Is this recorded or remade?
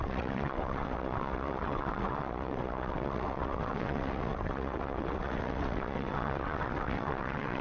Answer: remade